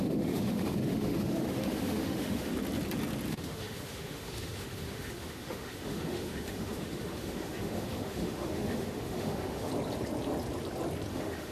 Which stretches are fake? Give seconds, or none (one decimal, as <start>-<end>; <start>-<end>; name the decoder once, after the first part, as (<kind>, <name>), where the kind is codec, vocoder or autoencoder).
0.0-2.5 (autoencoder, DAC-VAE); 3.3-9.7; 11.1-11.5